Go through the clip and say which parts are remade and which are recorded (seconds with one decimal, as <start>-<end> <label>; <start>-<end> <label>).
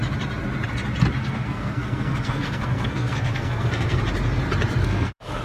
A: 0.0-1.2 recorded; 1.2-4.0 remade; 4.0-4.8 recorded; 4.8-5.4 remade